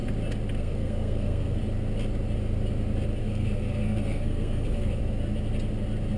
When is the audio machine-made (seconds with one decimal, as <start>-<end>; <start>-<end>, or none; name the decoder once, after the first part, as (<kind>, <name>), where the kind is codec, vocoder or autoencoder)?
0.6-1.6 (codec, SNAC); 3.2-5.0